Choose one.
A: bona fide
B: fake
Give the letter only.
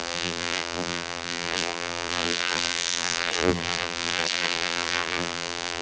B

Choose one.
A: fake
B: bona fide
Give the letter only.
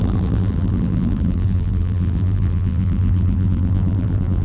A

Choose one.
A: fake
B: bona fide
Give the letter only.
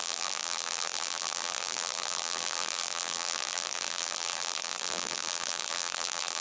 A